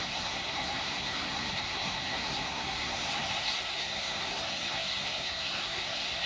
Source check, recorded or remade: remade